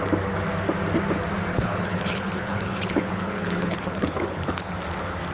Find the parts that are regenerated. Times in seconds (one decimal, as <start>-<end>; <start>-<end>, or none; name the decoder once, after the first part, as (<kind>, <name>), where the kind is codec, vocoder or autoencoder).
1.5-4.7 (codec, HILCodec)